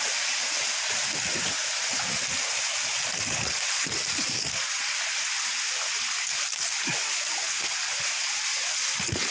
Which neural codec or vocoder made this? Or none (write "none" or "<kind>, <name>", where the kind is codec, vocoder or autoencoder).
none